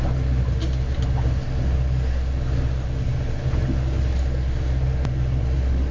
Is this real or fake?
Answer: real